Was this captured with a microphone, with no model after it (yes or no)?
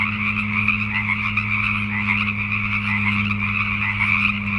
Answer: yes